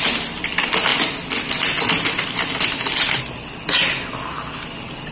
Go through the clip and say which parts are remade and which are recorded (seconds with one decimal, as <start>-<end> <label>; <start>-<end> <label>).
0.0-5.1 recorded